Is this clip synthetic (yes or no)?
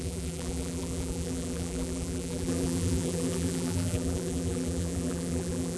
yes